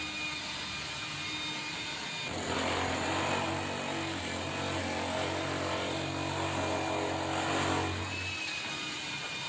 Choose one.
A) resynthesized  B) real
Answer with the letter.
B